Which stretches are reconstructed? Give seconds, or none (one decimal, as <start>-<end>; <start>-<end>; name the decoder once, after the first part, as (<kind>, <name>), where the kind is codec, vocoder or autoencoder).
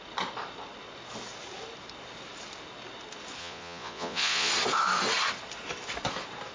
3.4-4.5 (vocoder, Vocos)